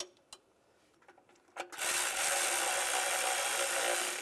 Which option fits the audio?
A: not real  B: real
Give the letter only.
B